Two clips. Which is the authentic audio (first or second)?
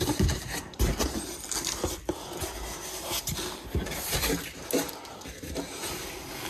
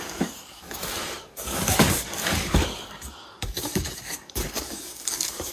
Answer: first